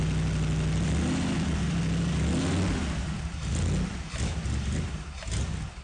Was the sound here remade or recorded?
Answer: recorded